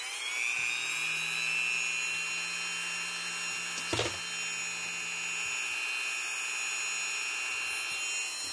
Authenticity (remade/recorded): recorded